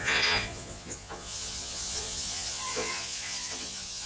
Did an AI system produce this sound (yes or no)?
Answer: yes